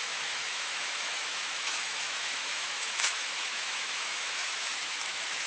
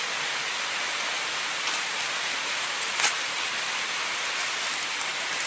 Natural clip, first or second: second